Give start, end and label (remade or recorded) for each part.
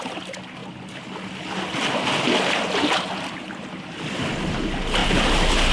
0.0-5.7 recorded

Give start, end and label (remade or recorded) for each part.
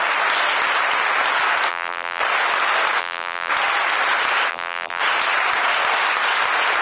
0.0-1.7 recorded; 1.7-2.2 remade; 2.2-3.0 recorded; 3.0-3.5 remade; 3.5-4.5 recorded; 4.5-5.0 remade; 5.0-6.8 recorded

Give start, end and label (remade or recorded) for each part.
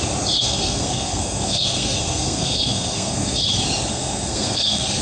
0.0-0.4 recorded; 0.4-3.4 remade; 3.4-3.9 recorded; 3.9-5.0 remade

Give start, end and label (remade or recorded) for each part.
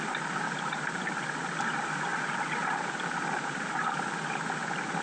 0.0-5.0 recorded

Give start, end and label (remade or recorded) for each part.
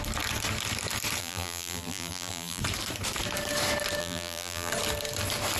0.0-1.2 recorded; 1.2-2.6 remade; 2.6-4.0 recorded; 4.0-4.7 remade; 4.7-5.6 recorded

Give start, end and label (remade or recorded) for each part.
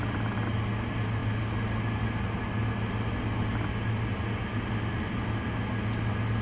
0.0-6.4 recorded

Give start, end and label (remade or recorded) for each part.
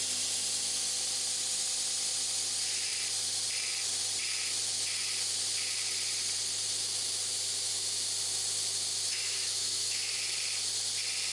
0.0-9.1 recorded; 9.1-10.3 remade; 10.3-11.3 recorded